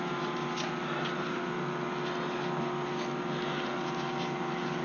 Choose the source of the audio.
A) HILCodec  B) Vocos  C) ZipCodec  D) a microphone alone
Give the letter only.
D